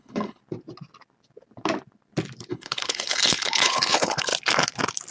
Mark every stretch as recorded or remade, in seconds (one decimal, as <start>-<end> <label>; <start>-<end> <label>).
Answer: 0.0-0.4 remade; 0.4-2.5 recorded; 2.5-4.3 remade; 4.3-5.1 recorded